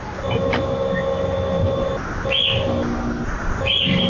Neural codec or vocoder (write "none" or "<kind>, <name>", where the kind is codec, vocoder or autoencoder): vocoder, BigVGAN v2